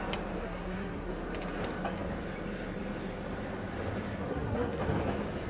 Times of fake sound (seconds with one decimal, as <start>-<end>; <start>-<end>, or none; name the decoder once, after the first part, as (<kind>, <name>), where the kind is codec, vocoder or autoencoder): 0.4-1.1 (codec, SNAC); 4.3-4.8